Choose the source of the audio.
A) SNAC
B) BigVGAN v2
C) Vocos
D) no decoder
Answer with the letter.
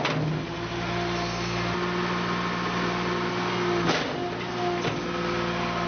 D